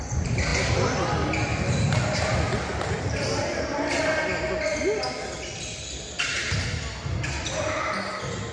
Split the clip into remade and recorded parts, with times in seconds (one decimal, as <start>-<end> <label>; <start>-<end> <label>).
0.0-8.5 recorded